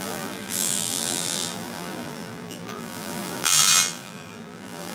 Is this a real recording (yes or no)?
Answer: no